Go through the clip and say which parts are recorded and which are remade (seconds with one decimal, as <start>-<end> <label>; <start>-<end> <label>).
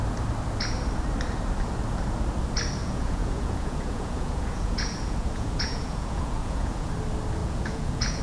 0.0-2.8 recorded; 2.8-6.9 remade; 6.9-7.4 recorded; 7.4-8.2 remade